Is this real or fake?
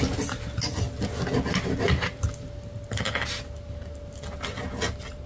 real